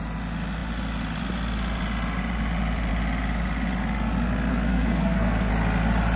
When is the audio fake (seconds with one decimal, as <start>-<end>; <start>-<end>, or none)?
4.5-5.5